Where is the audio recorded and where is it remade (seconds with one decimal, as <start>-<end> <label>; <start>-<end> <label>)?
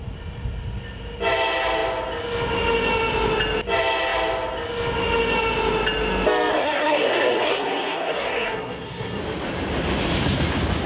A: 0.0-6.5 recorded; 6.5-9.2 remade; 9.2-10.9 recorded